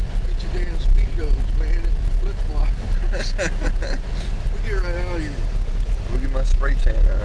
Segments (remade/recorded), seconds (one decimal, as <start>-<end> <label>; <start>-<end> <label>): 0.0-7.2 recorded

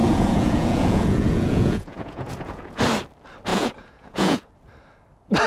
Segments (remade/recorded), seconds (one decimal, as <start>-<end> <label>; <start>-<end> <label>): 0.0-2.8 remade; 2.8-3.5 recorded; 3.5-4.5 remade; 4.5-5.5 recorded

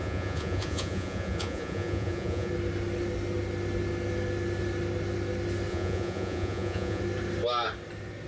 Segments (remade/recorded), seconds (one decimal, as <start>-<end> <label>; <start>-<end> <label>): 0.0-2.5 remade; 2.5-5.7 recorded; 5.7-7.0 remade; 7.0-8.3 recorded

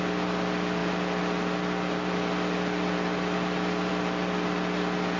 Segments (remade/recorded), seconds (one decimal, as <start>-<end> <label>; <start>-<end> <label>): 0.0-5.2 recorded